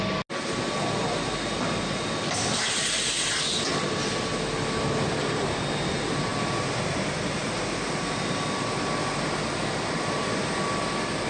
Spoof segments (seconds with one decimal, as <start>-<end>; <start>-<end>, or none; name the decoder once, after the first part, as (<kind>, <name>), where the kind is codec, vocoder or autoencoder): none